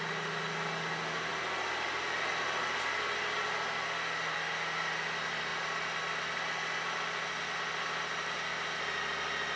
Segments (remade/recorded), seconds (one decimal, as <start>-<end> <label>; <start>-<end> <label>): 0.0-9.6 recorded